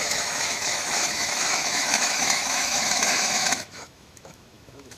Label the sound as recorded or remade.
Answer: remade